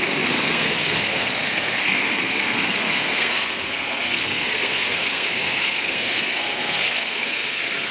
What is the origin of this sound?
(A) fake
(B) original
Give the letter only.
A